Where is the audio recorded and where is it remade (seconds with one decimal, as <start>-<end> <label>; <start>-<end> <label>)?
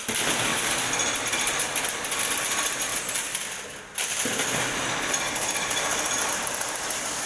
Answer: 0.0-7.3 recorded